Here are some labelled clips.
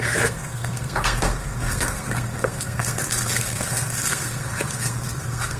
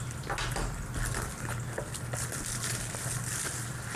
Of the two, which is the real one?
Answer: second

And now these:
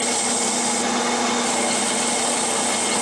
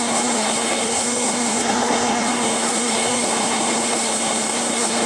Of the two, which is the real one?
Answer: first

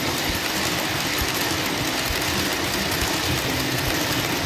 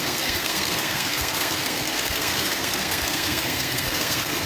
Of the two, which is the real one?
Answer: first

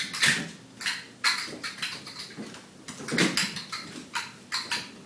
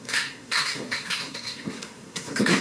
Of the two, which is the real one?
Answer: first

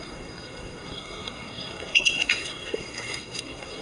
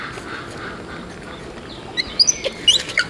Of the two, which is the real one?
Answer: second